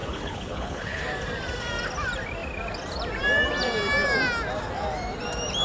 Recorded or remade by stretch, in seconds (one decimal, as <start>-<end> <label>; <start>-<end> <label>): 0.0-1.0 remade; 1.0-5.6 recorded